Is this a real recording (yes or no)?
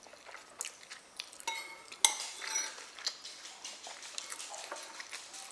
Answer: yes